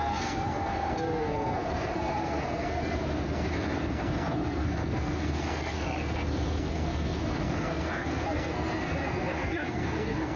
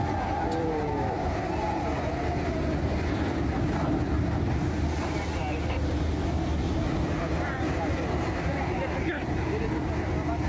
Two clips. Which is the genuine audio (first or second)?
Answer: second